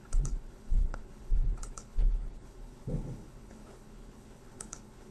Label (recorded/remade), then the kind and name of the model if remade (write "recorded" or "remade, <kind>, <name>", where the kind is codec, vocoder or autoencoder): remade, codec, HILCodec